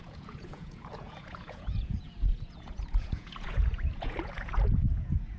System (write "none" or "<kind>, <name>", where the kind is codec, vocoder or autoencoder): vocoder, Vocos